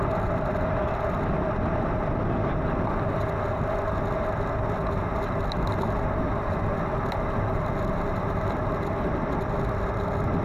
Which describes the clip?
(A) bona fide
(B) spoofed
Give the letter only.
A